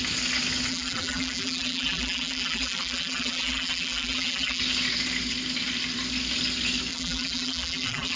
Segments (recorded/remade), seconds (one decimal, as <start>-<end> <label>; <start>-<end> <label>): 0.0-0.7 recorded; 0.7-4.6 remade; 4.6-6.9 recorded; 6.9-8.2 remade